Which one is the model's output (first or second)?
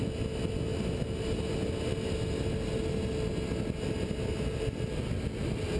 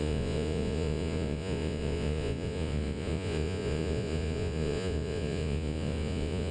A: second